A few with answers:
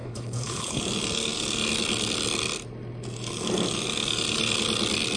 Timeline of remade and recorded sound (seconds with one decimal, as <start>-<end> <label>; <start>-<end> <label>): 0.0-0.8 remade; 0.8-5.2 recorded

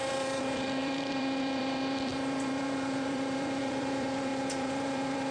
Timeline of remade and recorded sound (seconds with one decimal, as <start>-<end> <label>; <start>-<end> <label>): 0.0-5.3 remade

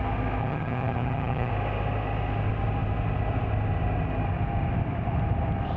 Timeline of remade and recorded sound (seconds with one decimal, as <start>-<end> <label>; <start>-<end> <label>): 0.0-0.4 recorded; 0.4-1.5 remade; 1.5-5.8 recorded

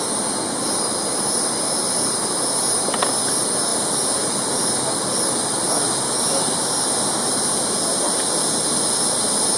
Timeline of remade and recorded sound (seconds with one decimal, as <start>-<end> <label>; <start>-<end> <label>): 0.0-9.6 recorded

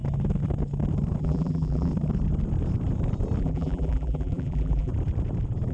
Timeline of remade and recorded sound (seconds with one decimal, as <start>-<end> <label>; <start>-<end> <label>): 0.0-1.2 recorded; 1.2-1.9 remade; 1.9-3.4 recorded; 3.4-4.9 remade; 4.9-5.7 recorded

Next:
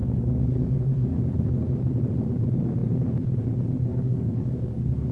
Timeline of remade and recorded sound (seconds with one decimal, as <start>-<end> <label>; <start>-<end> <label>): 0.0-1.2 remade; 1.2-3.9 recorded; 3.9-5.1 remade